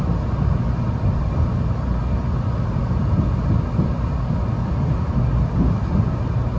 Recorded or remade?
recorded